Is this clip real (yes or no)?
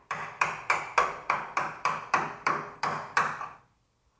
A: no